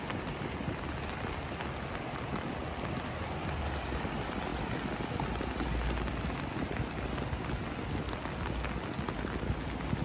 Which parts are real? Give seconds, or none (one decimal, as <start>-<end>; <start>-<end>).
0.0-10.0